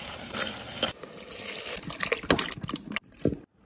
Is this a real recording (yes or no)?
yes